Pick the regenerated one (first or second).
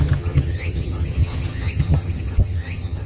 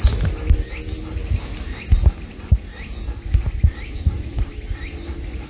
first